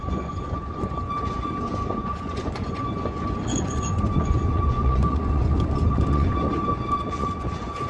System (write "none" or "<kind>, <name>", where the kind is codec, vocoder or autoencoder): vocoder, Vocos